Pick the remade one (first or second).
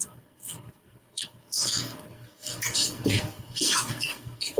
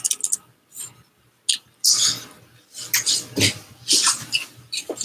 first